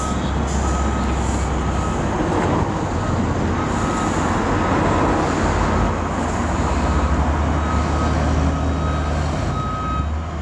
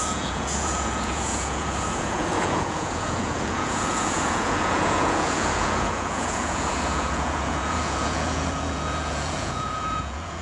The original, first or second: first